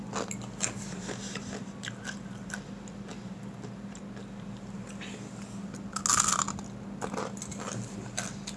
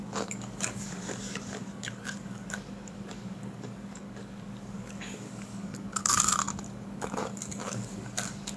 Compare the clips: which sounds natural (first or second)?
first